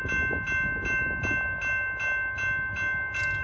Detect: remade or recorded recorded